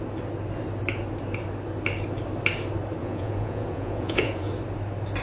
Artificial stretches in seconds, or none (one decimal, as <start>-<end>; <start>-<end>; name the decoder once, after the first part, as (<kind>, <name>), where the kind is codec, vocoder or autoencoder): 3.0-4.5 (vocoder, Vocos)